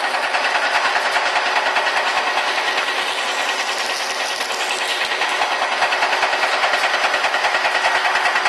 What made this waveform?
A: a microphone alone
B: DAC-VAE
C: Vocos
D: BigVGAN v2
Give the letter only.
A